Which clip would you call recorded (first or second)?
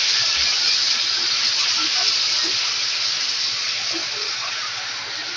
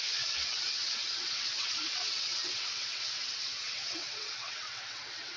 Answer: first